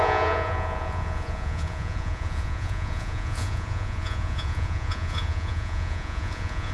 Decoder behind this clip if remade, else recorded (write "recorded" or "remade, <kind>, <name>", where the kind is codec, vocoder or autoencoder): remade, vocoder, Vocos